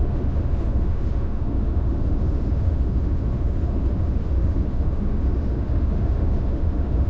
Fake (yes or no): yes